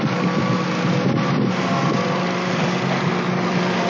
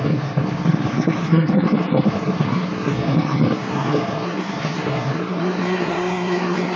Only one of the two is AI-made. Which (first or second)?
second